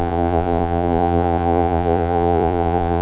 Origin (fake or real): fake